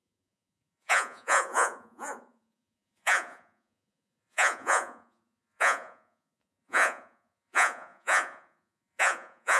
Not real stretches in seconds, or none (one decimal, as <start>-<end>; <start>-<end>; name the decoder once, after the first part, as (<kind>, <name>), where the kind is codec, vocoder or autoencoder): 0.0-9.6 (vocoder, Vocos)